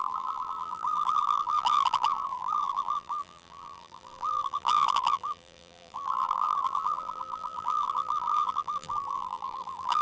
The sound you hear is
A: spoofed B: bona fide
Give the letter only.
A